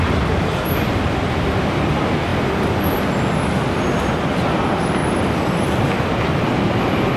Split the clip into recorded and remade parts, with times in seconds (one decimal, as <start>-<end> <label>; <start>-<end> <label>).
0.0-2.3 recorded; 2.3-3.0 remade; 3.0-5.0 recorded; 5.0-6.3 remade; 6.3-7.2 recorded